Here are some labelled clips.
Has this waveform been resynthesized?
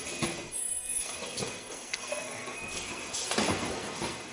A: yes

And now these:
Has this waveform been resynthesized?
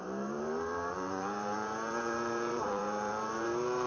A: yes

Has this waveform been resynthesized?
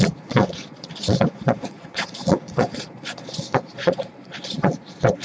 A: yes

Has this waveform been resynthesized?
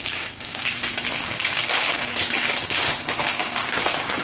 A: yes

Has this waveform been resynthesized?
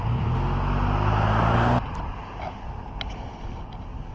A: no